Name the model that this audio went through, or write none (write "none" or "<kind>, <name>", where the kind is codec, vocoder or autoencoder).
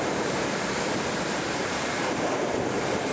vocoder, BigVGAN v2